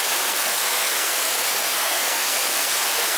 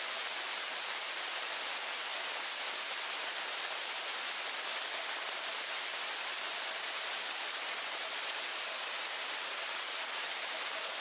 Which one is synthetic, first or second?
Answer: first